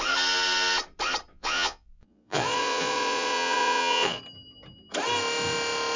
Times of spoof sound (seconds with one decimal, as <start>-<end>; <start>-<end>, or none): 1.3-4.2